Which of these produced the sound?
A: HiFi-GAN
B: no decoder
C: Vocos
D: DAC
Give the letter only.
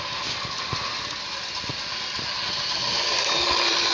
B